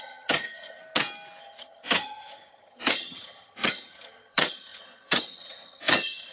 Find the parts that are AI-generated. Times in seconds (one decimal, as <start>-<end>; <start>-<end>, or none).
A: 0.0-0.8; 1.4-6.3